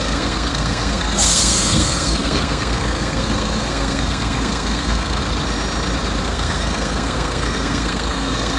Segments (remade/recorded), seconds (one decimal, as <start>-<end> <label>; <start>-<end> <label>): 0.0-5.2 remade; 5.2-6.2 recorded; 6.2-8.6 remade